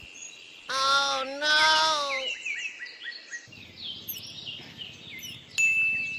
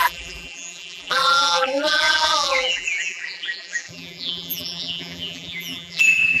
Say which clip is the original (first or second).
first